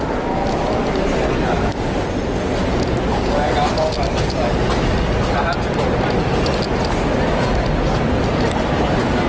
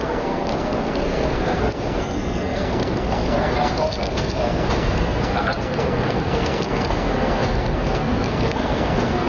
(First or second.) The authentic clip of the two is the first